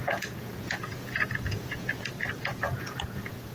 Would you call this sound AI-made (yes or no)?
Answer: yes